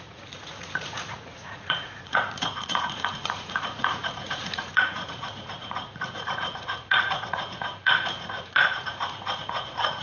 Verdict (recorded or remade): remade